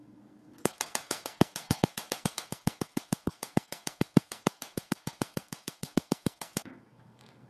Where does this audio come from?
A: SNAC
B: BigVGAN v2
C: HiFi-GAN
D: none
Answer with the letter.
A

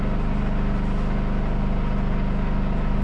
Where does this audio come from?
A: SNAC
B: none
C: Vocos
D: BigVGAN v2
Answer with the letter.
B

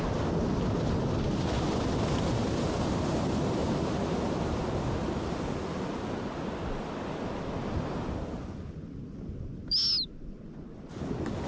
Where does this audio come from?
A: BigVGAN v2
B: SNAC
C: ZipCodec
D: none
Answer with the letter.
D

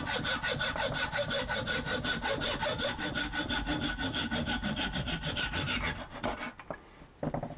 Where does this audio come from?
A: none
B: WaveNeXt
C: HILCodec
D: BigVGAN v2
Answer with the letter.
A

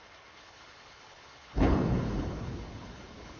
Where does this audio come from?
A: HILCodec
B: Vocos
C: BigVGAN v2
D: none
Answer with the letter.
A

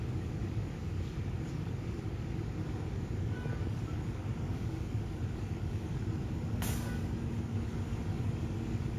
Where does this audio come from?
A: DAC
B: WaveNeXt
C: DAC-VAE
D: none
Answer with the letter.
A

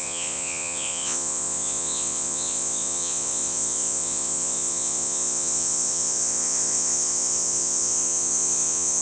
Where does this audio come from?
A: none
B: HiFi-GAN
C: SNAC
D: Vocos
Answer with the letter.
D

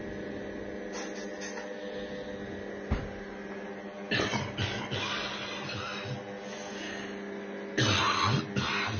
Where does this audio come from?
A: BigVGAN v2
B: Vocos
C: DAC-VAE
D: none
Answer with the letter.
D